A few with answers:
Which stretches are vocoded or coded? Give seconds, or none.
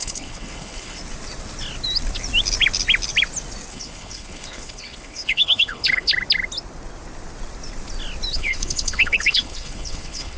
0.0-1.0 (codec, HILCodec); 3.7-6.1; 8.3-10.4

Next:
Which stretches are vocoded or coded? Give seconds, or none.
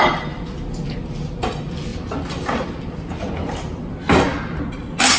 none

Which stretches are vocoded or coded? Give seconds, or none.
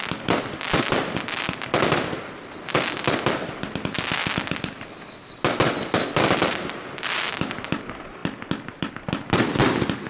none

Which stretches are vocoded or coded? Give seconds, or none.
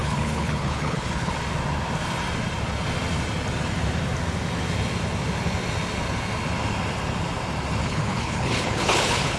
0.0-1.3 (codec, HILCodec); 7.8-9.4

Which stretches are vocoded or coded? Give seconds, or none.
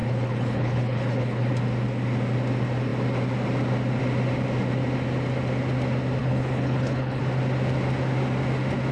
0.0-1.5 (codec, HILCodec); 6.2-7.2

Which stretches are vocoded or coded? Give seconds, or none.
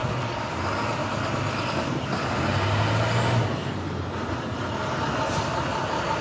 none